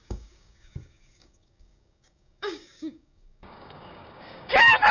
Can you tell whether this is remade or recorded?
remade